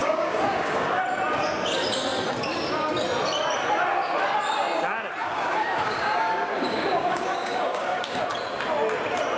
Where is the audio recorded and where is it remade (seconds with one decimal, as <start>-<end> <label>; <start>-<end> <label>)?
0.0-1.0 remade; 1.0-5.2 recorded; 5.2-8.2 remade; 8.2-9.4 recorded